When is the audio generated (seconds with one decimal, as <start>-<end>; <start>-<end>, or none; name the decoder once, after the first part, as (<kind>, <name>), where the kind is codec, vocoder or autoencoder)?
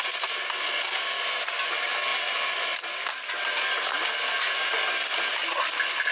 none